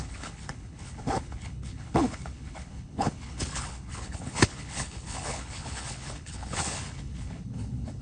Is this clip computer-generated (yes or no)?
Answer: yes